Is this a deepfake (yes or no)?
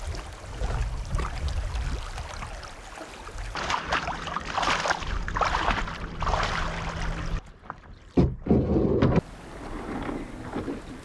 no